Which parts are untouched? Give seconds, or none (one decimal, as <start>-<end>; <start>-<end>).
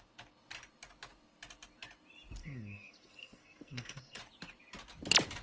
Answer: 0.0-2.4; 4.2-5.4